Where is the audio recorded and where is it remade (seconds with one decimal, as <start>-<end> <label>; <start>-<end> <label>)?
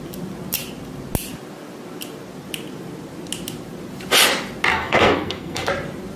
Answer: 0.0-4.7 recorded; 4.7-5.7 remade; 5.7-6.2 recorded